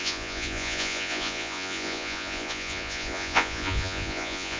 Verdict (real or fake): fake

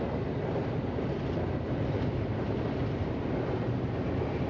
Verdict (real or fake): real